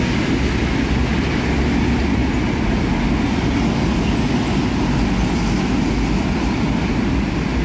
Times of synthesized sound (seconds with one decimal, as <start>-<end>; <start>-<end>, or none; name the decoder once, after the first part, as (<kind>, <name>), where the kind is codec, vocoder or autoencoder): none